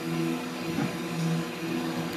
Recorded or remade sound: remade